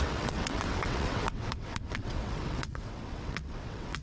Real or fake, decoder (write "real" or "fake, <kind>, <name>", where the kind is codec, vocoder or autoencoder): fake, vocoder, WaveNeXt